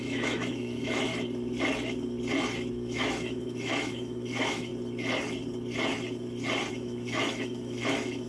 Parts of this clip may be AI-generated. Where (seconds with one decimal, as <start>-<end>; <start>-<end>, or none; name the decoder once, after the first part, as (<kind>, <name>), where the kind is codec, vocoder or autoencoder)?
0.0-1.1 (autoencoder, DAC-VAE); 2.7-4.7; 6.7-8.3